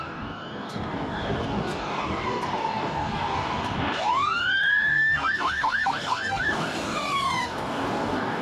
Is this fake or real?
fake